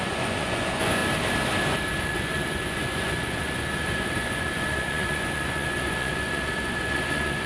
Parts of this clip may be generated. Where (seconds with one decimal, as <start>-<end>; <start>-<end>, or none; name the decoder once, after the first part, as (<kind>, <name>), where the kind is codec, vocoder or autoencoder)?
0.0-1.0 (vocoder, Vocos); 2.0-7.5